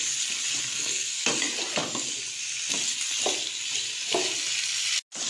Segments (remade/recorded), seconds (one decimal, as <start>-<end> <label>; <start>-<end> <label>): 0.0-0.6 recorded; 0.6-1.2 remade; 1.2-5.3 recorded